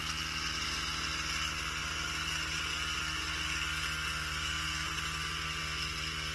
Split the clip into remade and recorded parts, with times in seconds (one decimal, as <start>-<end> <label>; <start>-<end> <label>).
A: 0.0-6.3 recorded